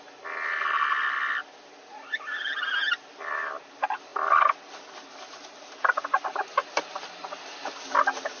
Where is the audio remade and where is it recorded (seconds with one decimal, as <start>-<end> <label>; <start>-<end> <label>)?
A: 0.0-8.4 recorded